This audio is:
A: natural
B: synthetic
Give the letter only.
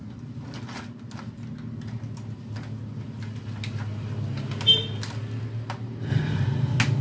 A